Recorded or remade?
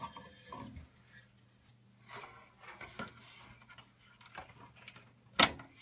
recorded